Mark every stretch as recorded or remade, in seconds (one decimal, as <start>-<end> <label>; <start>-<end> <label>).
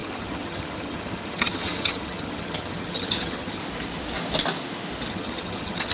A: 0.0-3.6 remade; 3.6-5.1 recorded; 5.1-5.9 remade